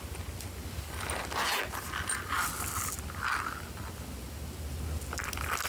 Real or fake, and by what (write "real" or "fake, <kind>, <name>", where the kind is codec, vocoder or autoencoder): real